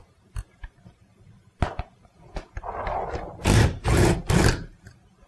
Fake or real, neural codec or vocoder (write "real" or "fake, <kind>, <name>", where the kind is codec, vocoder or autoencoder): real